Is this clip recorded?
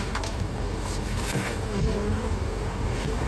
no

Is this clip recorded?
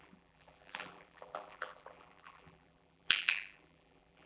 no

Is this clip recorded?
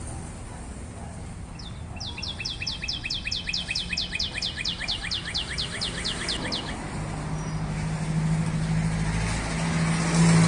yes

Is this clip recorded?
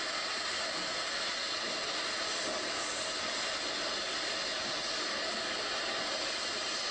yes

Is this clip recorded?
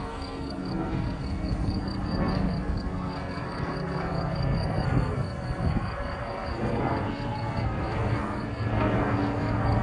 no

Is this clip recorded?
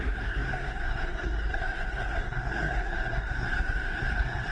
no